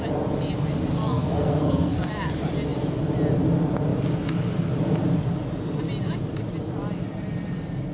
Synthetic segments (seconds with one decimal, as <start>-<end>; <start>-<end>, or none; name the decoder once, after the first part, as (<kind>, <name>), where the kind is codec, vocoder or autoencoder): 1.0-2.1 (codec, SNAC)